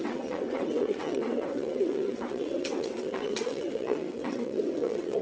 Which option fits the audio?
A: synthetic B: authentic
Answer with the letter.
A